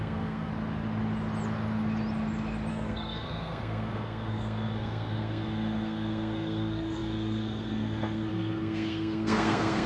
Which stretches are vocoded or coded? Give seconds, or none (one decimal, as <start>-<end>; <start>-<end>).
0.0-0.5; 2.7-9.9